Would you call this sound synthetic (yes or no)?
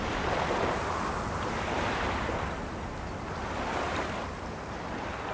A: no